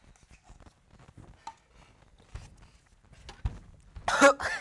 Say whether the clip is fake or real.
real